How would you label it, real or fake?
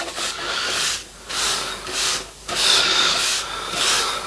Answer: fake